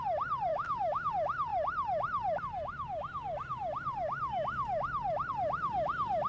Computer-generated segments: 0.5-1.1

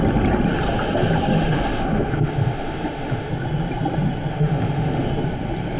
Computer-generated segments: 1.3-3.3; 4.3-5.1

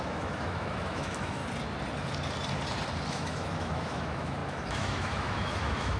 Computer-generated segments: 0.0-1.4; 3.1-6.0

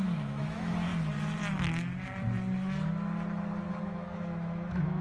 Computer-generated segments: 0.0-0.9; 3.8-5.0

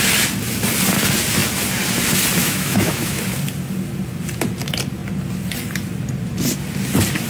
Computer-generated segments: 2.4-3.2

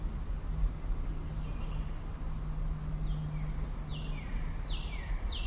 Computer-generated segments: none

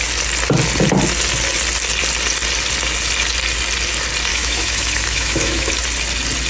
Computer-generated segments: 4.3-5.7

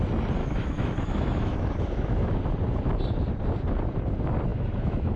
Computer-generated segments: 0.4-2.4; 4.5-5.2